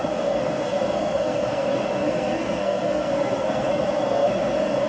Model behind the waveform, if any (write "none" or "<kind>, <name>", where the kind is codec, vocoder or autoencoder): codec, SNAC